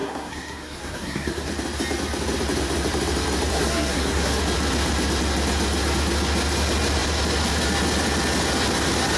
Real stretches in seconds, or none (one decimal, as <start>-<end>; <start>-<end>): 1.5-3.5; 4.4-9.2